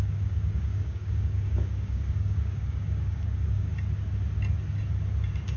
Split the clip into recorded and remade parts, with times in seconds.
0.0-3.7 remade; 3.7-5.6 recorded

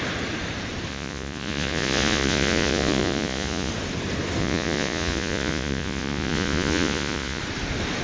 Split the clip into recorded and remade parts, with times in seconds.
0.0-0.9 recorded; 0.9-3.7 remade; 3.7-4.4 recorded; 4.4-7.4 remade; 7.4-8.0 recorded

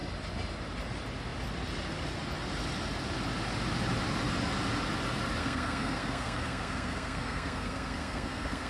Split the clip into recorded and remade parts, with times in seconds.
0.0-5.4 recorded; 5.4-8.7 remade

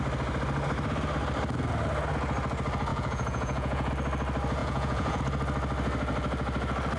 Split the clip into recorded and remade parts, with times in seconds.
0.0-2.9 recorded; 2.9-3.9 remade; 3.9-4.6 recorded; 4.6-5.2 remade; 5.2-7.0 recorded

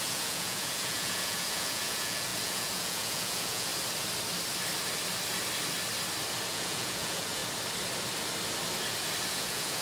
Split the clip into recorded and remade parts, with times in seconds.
0.0-3.7 remade; 3.7-6.5 recorded; 6.5-7.4 remade; 7.4-9.3 recorded; 9.3-9.8 remade

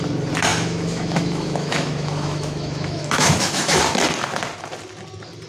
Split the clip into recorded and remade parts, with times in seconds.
0.0-0.5 recorded; 0.5-3.8 remade; 3.8-5.5 recorded

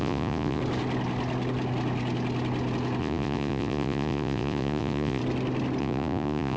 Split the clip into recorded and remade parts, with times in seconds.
0.0-0.6 remade; 0.6-3.0 recorded; 3.0-5.2 remade; 5.2-5.8 recorded; 5.8-6.6 remade